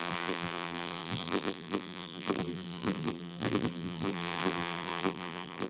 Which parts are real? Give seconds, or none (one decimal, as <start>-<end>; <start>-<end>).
none